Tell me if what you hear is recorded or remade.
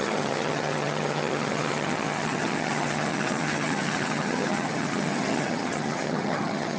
remade